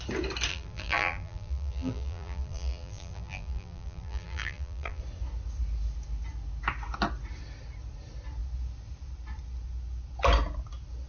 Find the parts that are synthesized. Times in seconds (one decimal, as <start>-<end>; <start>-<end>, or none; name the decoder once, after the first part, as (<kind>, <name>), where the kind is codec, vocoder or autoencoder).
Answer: 0.5-5.0 (vocoder, BigVGAN v2)